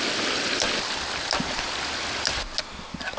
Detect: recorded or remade recorded